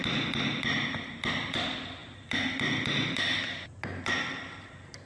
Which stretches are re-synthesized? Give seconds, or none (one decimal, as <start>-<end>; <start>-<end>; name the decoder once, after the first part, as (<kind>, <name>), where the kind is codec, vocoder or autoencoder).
none